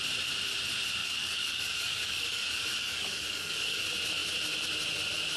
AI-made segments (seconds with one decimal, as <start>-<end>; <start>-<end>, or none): 1.0-3.8